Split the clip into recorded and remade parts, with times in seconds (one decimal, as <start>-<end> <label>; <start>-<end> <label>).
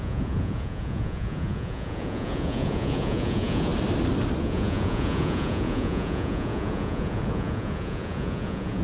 0.0-3.7 remade; 3.7-4.4 recorded; 4.4-8.8 remade